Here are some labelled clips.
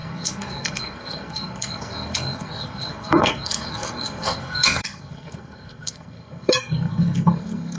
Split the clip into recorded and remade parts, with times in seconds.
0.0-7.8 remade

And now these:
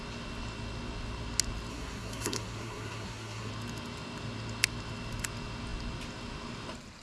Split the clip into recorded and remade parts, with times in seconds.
0.0-1.7 recorded; 1.7-3.5 remade; 3.5-7.0 recorded